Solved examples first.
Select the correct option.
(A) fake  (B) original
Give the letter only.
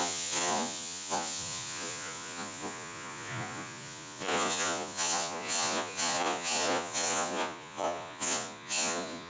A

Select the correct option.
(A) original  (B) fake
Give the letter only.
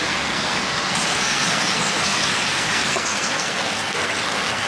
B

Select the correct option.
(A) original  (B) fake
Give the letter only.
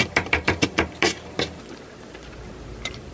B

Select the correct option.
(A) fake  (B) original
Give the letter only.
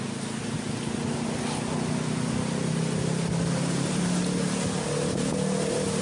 B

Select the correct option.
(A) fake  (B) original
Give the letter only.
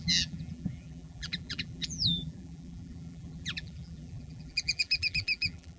A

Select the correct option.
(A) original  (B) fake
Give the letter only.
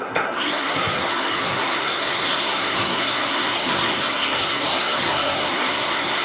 B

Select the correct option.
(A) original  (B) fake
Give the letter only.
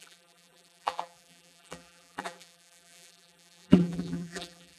B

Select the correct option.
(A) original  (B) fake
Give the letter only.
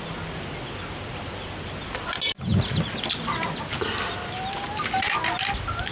A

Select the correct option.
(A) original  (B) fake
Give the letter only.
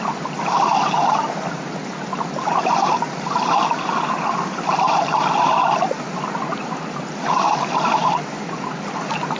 A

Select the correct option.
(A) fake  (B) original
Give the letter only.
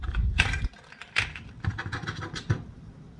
B